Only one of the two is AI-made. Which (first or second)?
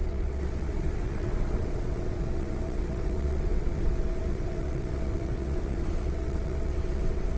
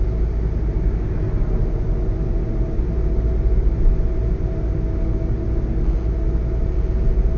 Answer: first